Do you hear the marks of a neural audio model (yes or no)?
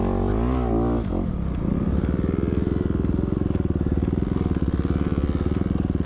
no